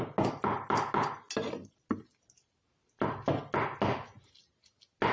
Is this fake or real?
real